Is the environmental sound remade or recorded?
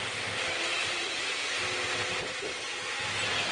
recorded